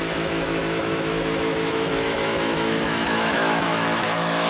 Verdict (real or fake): fake